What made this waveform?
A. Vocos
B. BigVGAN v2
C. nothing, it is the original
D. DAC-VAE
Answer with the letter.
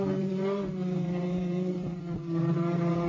B